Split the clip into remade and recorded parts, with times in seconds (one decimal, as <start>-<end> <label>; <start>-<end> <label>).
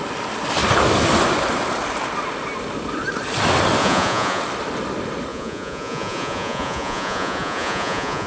0.0-3.8 recorded; 3.8-4.4 remade; 4.4-5.3 recorded; 5.3-8.3 remade